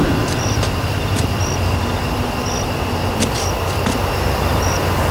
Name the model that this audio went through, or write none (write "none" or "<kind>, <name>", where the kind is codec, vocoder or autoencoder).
none